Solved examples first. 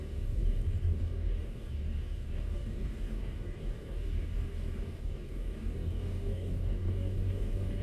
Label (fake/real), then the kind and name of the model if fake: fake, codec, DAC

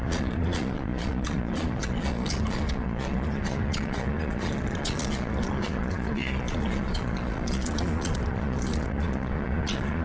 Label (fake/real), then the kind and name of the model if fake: fake, vocoder, Vocos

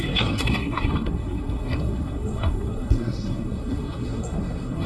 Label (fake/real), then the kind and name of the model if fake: fake, codec, SNAC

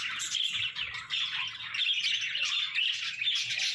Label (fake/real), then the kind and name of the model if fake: real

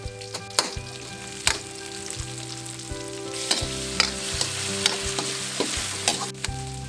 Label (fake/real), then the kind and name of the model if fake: real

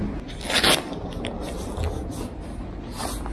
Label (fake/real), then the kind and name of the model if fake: real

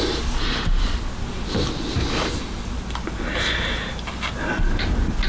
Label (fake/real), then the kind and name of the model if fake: real